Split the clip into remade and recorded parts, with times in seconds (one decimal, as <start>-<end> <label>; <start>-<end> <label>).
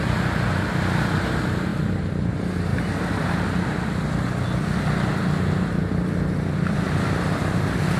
0.0-8.0 recorded